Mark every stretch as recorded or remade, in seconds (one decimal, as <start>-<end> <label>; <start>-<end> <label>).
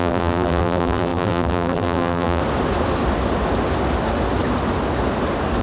0.0-2.4 remade; 2.4-5.6 recorded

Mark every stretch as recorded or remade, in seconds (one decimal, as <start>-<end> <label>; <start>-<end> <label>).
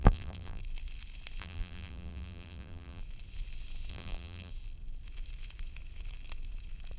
0.0-0.6 remade; 0.6-1.4 recorded; 1.4-3.0 remade; 3.0-3.9 recorded; 3.9-4.5 remade; 4.5-7.0 recorded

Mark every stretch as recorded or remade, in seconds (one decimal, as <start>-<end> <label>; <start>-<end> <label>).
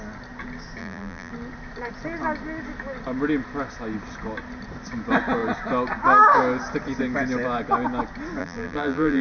0.0-0.8 recorded; 0.8-1.3 remade; 1.3-8.4 recorded; 8.4-9.2 remade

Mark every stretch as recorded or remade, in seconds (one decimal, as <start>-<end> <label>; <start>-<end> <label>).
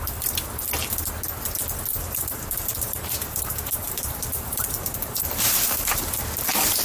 0.0-1.9 recorded; 1.9-6.0 remade; 6.0-6.8 recorded